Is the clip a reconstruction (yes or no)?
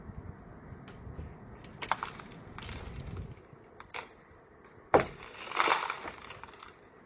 no